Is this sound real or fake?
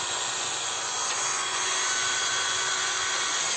fake